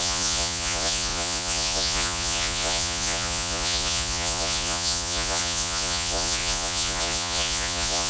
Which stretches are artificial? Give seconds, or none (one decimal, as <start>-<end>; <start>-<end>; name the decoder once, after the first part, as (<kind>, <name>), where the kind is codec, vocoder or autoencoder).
0.0-8.1 (vocoder, Vocos)